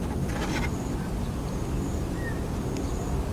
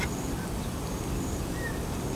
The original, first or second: first